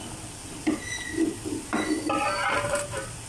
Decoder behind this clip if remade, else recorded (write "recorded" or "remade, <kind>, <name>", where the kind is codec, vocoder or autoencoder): recorded